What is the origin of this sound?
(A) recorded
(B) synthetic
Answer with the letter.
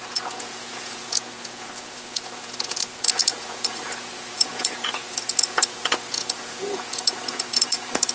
B